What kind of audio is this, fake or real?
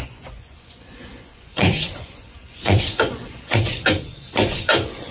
fake